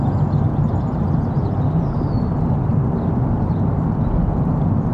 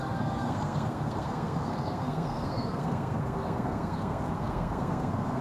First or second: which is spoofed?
second